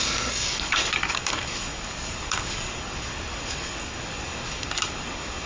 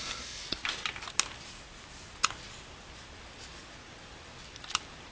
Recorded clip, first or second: second